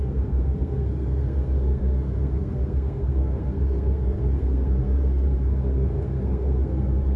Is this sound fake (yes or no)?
yes